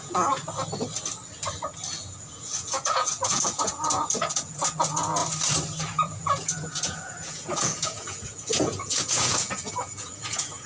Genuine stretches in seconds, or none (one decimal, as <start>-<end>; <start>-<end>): 0.4-1.9; 5.2-5.8